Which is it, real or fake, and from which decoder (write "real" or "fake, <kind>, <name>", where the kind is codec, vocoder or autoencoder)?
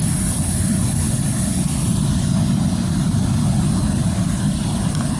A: real